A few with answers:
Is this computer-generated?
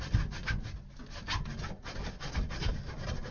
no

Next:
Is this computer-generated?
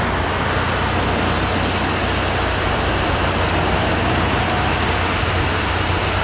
no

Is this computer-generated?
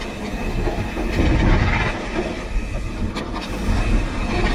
no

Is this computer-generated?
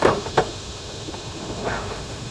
yes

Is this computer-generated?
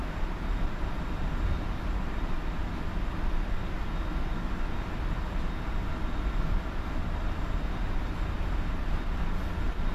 no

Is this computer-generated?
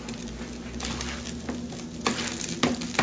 no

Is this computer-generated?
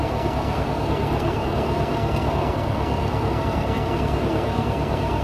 yes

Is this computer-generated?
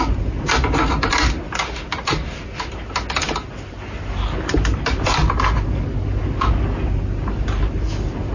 no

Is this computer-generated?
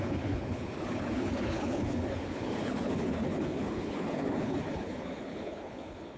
yes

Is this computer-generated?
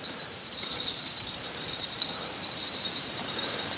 yes